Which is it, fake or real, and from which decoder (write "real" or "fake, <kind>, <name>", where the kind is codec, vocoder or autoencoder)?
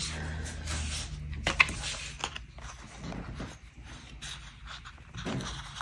real